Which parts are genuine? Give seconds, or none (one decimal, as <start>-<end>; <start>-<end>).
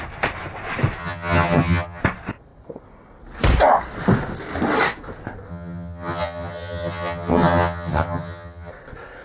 0.0-1.0; 2.0-5.5; 8.7-9.2